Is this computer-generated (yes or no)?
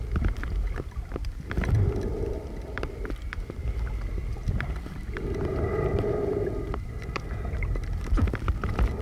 yes